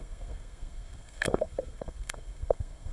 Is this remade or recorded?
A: remade